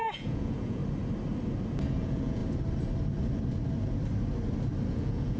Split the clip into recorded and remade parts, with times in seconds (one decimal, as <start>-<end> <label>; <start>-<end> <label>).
0.0-0.8 remade; 0.8-2.0 recorded; 2.0-2.4 remade; 2.4-4.9 recorded; 4.9-5.4 remade